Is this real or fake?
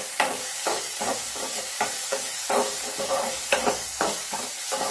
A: fake